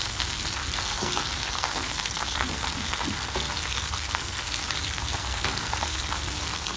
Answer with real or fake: fake